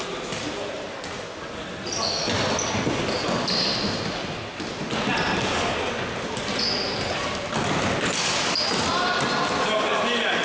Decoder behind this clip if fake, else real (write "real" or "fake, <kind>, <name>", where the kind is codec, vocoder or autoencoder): real